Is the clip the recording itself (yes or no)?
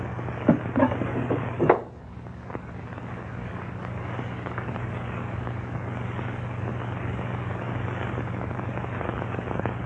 no